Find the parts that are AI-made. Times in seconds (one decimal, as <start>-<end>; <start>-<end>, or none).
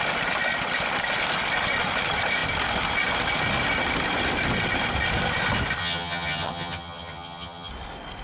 5.8-7.7